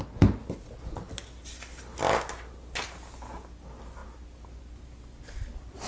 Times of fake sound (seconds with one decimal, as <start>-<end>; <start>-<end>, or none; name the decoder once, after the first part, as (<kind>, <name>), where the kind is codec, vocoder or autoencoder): none